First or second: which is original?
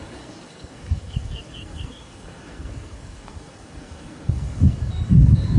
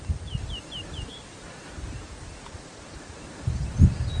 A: second